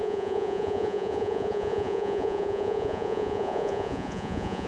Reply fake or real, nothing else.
fake